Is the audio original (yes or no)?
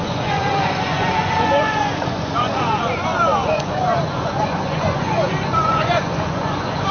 no